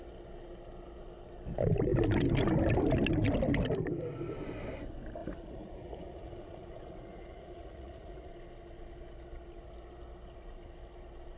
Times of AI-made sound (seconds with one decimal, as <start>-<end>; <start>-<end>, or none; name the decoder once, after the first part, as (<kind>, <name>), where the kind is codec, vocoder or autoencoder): 5.2-8.3 (vocoder, Vocos)